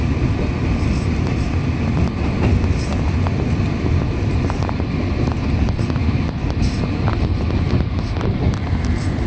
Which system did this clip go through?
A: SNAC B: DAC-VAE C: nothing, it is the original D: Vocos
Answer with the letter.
C